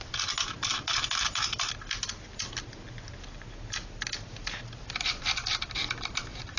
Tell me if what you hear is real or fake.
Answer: real